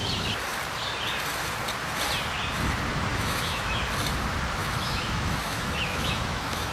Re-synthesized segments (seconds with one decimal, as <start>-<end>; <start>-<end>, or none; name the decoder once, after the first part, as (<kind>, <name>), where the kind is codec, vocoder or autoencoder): 3.1-3.8 (autoencoder, DAC-VAE); 4.6-6.7